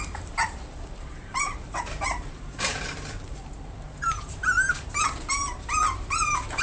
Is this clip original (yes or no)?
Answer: no